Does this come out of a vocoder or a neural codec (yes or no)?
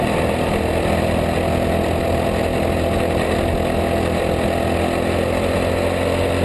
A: no